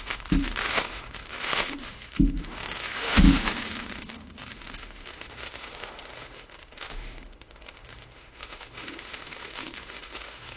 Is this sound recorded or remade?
remade